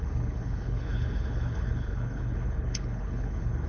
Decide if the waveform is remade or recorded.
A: remade